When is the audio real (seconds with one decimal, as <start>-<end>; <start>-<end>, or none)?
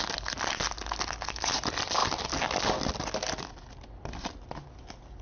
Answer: 0.0-5.2